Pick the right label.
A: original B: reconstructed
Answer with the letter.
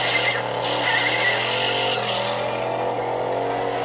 A